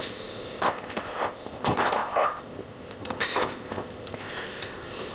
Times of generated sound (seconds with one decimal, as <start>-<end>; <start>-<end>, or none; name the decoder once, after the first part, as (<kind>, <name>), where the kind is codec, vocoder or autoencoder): 0.0-5.1 (codec, ZipCodec)